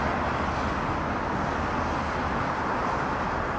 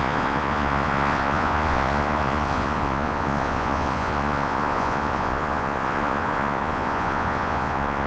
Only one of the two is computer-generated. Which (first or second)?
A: second